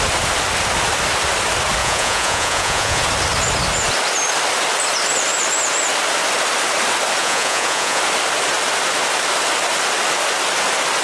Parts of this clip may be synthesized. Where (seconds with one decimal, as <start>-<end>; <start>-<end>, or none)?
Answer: 1.8-3.0; 7.2-8.0